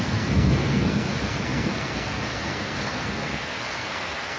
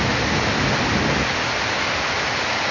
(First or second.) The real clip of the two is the second